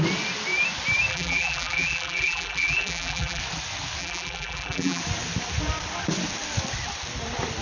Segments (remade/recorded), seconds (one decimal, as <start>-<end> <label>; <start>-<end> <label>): 0.0-1.1 recorded; 1.1-3.4 remade; 3.4-4.0 recorded; 4.0-5.0 remade; 5.0-7.6 recorded